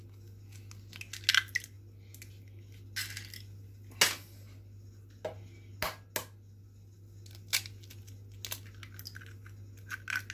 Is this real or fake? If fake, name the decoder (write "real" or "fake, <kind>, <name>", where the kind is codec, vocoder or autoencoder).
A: real